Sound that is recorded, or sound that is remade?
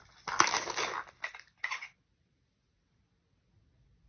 recorded